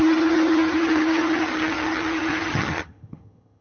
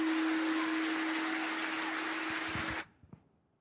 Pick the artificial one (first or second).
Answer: first